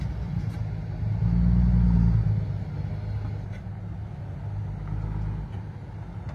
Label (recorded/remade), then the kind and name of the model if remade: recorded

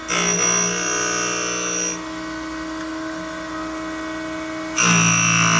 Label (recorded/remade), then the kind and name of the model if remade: recorded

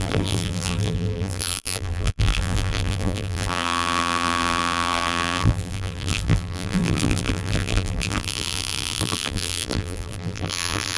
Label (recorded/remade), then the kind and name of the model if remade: remade, vocoder, BigVGAN v2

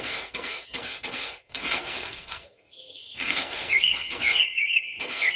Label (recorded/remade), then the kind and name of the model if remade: remade, codec, SNAC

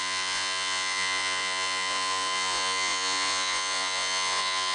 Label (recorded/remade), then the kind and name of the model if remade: remade, vocoder, Vocos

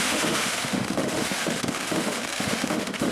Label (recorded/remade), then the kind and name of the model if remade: remade, autoencoder, DAC-VAE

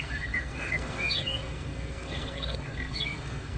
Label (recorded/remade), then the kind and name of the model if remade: remade, codec, SNAC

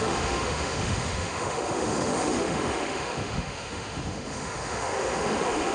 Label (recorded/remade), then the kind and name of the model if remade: remade, autoencoder, DAC-VAE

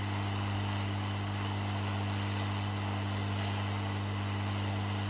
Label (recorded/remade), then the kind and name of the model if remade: recorded